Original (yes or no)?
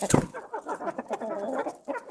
yes